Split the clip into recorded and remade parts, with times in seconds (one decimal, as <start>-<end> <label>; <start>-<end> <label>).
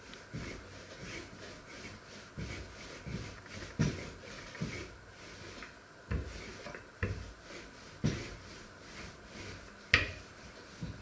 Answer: 0.0-11.0 recorded